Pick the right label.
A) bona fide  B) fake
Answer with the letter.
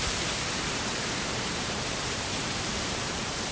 B